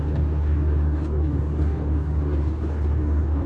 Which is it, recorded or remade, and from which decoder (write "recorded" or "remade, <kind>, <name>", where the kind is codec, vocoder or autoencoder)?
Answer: remade, codec, DAC